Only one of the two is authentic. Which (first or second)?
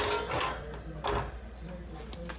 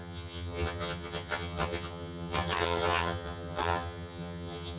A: first